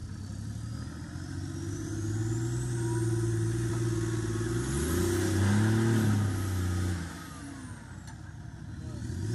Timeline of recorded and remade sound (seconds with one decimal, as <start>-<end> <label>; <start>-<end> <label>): 0.0-9.3 recorded